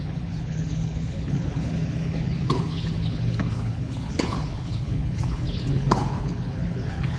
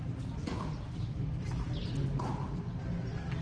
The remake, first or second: first